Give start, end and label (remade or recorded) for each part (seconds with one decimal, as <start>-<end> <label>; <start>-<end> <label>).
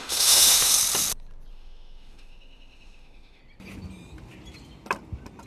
0.0-0.7 remade; 0.7-1.5 recorded; 1.5-3.4 remade; 3.4-5.5 recorded